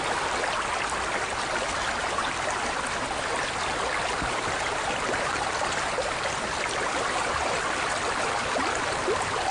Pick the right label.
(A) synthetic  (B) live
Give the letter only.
B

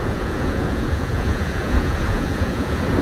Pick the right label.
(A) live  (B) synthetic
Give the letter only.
B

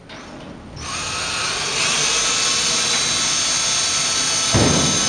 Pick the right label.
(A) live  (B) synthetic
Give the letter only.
A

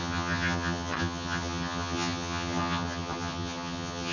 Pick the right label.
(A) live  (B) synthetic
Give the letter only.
B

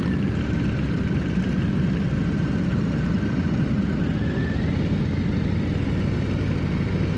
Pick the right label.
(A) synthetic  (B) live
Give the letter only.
B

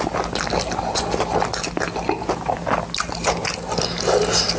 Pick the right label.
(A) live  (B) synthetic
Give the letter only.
A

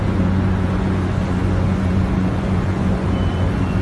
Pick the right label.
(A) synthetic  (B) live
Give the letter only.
A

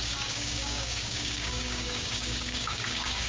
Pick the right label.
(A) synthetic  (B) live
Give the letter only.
A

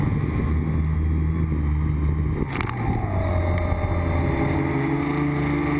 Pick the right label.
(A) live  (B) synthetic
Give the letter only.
A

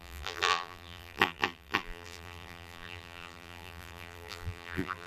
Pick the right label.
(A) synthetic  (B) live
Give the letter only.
A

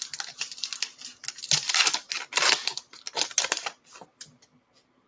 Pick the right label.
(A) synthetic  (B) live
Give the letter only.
B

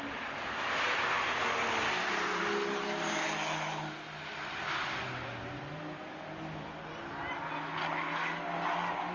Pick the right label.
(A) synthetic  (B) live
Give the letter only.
B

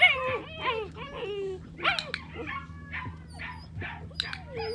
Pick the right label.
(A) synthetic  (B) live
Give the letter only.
B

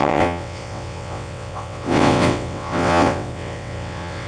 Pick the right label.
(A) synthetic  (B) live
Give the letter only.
A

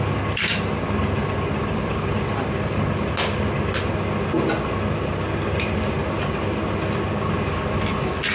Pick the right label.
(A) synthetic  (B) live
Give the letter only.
B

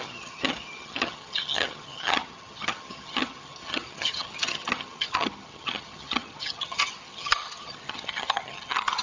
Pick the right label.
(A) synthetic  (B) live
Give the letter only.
A